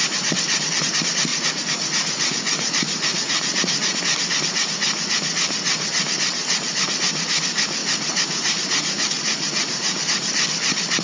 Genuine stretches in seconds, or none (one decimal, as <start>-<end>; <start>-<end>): 0.0-1.3; 4.0-7.8; 10.0-11.0